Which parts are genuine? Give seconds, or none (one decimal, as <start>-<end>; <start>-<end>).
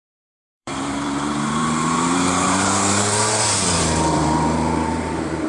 none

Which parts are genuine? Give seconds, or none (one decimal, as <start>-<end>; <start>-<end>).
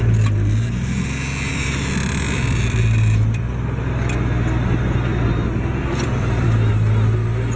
0.0-1.5; 3.8-5.8; 6.7-7.6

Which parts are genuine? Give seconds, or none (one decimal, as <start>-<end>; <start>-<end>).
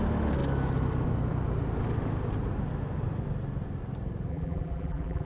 0.0-4.3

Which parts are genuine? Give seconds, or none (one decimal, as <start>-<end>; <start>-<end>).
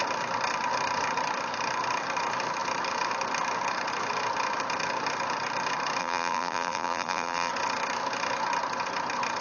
0.0-6.0; 7.5-9.4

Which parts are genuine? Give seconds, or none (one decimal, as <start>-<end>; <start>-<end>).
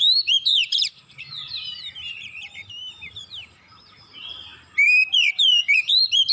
none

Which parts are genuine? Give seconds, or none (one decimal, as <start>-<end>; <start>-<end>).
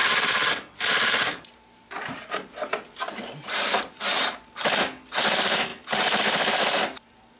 0.5-0.9; 4.3-7.4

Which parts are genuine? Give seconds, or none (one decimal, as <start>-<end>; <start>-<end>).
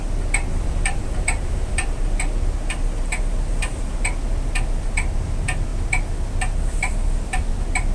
0.0-0.5; 2.0-7.9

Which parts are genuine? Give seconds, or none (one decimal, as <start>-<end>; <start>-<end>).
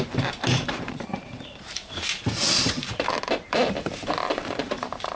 none